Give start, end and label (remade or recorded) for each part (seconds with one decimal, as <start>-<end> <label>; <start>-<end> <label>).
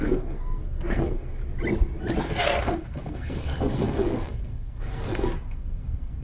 0.0-1.4 remade; 1.4-2.2 recorded; 2.2-6.2 remade